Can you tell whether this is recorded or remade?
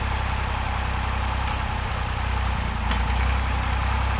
recorded